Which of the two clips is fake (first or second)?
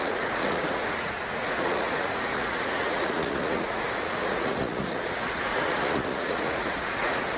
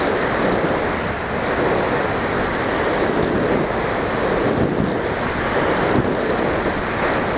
first